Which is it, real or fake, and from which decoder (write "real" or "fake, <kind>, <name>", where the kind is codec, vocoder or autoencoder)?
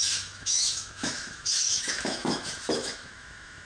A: fake, autoencoder, DAC-VAE